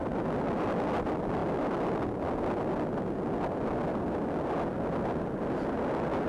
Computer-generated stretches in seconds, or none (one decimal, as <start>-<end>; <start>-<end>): none

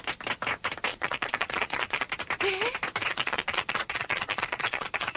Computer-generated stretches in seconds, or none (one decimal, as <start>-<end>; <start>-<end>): 0.9-2.1; 3.0-5.2

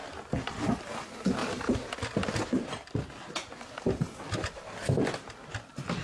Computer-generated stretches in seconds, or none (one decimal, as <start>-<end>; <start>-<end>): none

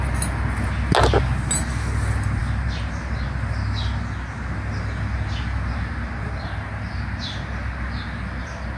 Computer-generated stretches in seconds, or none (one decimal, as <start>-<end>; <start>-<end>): none

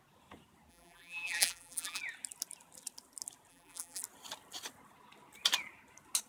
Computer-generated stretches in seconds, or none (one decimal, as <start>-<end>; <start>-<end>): 0.7-2.0; 3.5-4.0

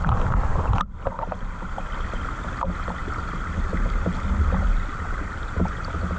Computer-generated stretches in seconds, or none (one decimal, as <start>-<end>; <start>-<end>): none